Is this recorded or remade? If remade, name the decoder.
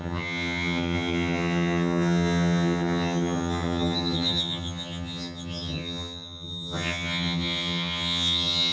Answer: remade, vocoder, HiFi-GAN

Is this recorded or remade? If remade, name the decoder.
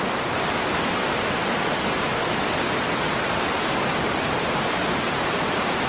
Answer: recorded